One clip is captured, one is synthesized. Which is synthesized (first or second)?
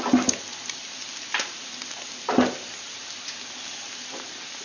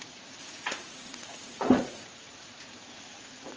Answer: second